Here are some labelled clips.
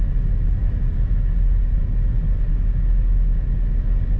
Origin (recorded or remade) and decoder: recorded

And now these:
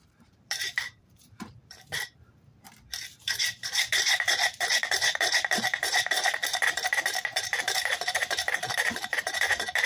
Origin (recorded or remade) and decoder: remade, vocoder, BigVGAN v2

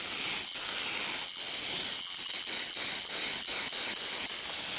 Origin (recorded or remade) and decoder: recorded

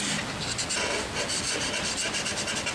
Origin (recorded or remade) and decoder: recorded